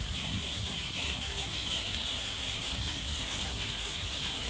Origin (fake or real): fake